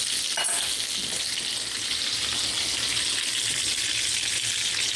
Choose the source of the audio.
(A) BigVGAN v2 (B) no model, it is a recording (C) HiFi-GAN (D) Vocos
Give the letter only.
B